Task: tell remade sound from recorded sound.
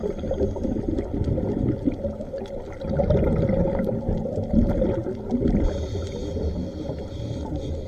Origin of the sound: recorded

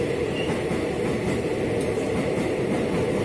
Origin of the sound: recorded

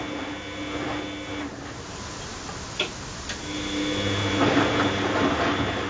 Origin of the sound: recorded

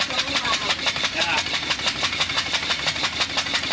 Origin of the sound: remade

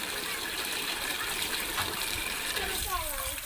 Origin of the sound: remade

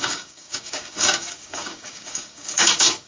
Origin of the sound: remade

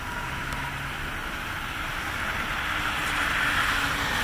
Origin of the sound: recorded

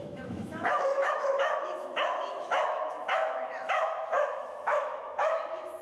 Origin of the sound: remade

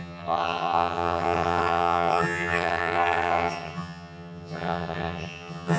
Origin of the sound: remade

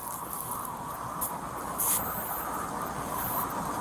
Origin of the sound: recorded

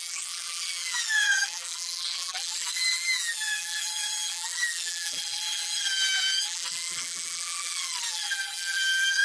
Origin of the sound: remade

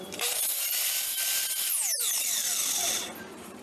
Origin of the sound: remade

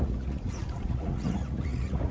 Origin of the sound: remade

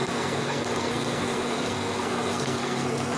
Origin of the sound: remade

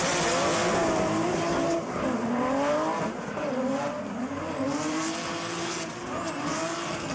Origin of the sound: recorded